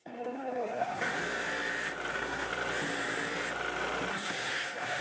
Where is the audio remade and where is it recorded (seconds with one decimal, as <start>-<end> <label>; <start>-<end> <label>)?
0.0-1.2 remade; 1.2-2.1 recorded; 2.1-2.5 remade; 2.5-4.1 recorded; 4.1-5.0 remade